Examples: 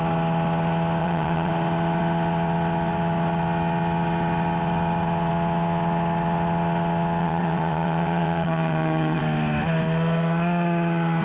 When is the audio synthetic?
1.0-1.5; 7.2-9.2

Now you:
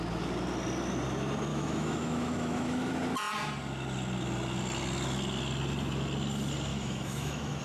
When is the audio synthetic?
1.5-2.9; 6.7-7.6

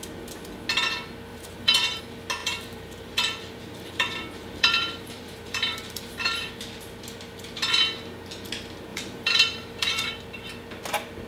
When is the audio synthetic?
1.3-2.0; 2.4-6.5; 8.9-10.1